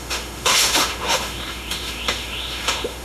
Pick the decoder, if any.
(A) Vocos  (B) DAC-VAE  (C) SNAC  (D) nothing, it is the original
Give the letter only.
B